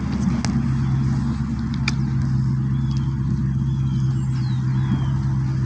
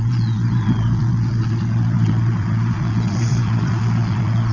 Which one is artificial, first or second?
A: second